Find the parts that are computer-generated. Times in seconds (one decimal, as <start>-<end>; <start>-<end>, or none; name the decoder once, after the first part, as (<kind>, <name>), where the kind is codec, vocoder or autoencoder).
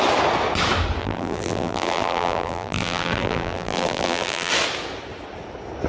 1.0-4.5 (vocoder, BigVGAN v2)